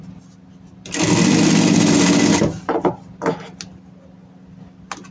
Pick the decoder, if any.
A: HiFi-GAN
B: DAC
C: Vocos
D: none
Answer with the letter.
D